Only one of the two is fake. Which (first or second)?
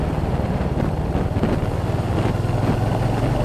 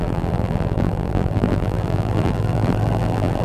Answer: second